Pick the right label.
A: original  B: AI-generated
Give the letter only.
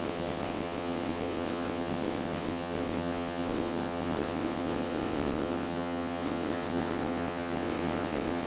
B